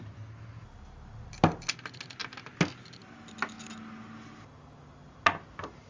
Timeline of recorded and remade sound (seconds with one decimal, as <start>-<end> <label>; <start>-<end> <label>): 0.0-5.9 recorded